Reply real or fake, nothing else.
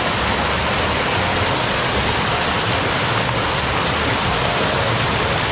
real